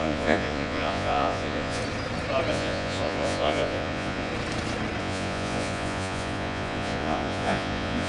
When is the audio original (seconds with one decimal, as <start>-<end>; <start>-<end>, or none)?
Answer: 1.8-2.5; 4.3-5.0